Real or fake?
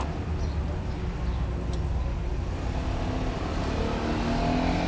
real